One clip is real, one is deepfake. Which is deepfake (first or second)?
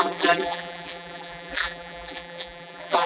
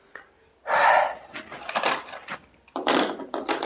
first